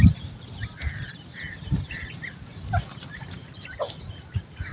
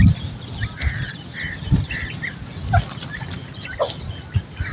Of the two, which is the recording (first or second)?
second